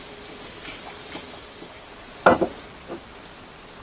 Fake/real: real